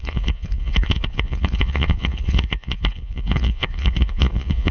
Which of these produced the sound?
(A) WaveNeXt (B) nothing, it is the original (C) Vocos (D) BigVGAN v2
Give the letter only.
C